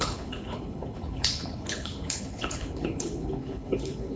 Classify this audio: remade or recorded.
remade